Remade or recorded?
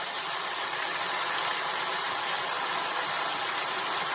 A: recorded